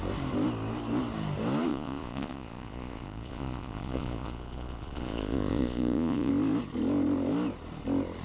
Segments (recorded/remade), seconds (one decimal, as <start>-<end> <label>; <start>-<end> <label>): 0.0-1.7 recorded; 1.7-6.3 remade; 6.3-8.2 recorded